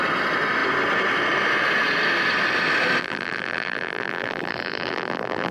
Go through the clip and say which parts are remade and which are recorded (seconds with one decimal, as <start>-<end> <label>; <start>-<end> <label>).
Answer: 0.0-3.0 recorded; 3.0-5.5 remade